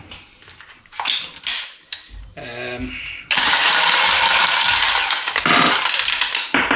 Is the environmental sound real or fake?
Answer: real